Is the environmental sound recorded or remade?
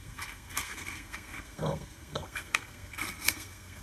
remade